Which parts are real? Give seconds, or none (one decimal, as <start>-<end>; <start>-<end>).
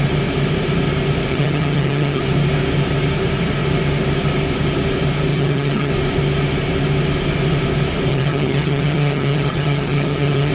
0.0-1.3; 2.2-5.3; 5.9-8.1